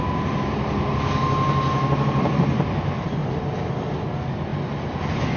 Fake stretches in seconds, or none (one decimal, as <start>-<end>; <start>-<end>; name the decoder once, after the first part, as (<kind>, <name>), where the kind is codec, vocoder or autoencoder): none